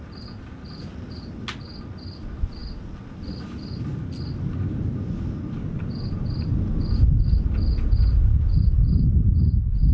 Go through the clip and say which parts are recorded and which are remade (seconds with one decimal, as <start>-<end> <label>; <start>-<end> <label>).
0.0-9.9 recorded

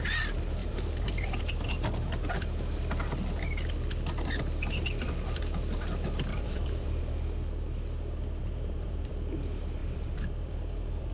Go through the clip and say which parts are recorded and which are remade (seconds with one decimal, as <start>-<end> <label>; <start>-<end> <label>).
0.0-0.6 recorded; 0.6-1.4 remade; 1.4-6.3 recorded; 6.3-7.0 remade; 7.0-8.4 recorded; 8.4-9.1 remade; 9.1-9.8 recorded; 9.8-11.1 remade

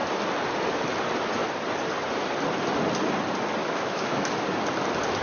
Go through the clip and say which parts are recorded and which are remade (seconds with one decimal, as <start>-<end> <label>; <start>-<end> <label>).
0.0-3.6 recorded; 3.6-4.3 remade; 4.3-5.2 recorded

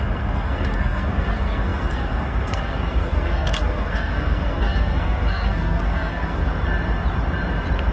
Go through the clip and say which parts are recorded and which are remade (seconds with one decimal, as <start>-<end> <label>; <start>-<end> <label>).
0.0-6.4 remade; 6.4-7.9 recorded

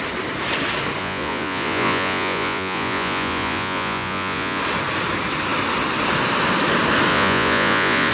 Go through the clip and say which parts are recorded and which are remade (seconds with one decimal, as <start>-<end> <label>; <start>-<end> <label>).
0.0-1.0 recorded; 1.0-4.6 remade; 4.6-7.1 recorded; 7.1-8.1 remade